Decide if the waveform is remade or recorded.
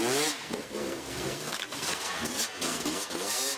remade